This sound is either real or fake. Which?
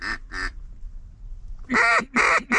real